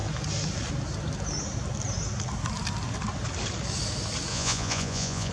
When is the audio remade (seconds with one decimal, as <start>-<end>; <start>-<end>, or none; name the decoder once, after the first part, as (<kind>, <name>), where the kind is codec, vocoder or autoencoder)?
4.3-5.3 (vocoder, Vocos)